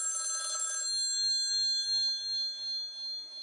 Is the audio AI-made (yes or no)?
no